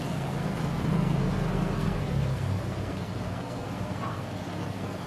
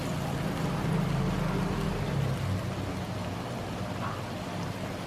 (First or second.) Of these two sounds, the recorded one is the second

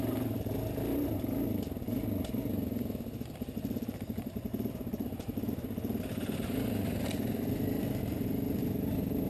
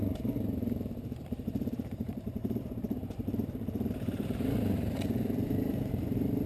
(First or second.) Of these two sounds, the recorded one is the first